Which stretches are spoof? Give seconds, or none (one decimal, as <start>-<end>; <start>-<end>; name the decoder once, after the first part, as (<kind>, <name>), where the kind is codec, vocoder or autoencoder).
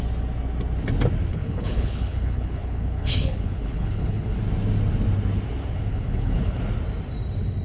1.3-4.4 (codec, HILCodec); 5.9-6.6